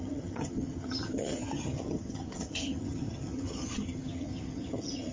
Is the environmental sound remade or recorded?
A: remade